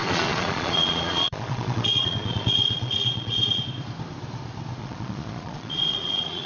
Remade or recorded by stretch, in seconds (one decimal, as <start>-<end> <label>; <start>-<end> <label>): 0.0-3.6 remade; 3.6-4.8 recorded; 4.8-6.5 remade